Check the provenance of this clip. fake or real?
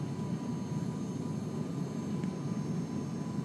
real